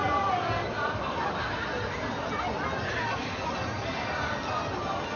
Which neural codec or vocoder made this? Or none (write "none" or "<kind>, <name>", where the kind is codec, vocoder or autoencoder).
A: none